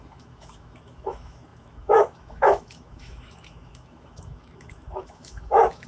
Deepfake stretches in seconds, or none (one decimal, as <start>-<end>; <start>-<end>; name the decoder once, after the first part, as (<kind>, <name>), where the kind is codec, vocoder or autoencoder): 0.0-5.9 (autoencoder, DAC-VAE)